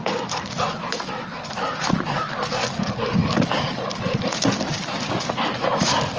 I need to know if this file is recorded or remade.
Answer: recorded